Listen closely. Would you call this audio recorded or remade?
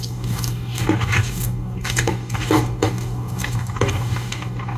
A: remade